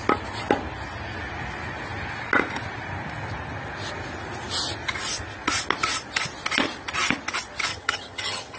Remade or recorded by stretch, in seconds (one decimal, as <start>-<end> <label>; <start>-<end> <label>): 0.0-7.7 recorded; 7.7-8.6 remade